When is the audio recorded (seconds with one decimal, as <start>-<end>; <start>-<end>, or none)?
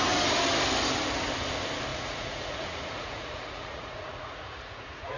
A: 0.0-1.9